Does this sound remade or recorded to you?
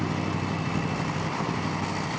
recorded